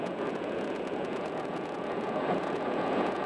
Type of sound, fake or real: fake